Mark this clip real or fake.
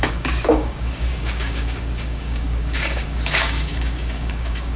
fake